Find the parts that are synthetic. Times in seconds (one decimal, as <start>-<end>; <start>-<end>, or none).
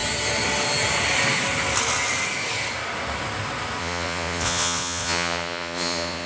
3.8-6.3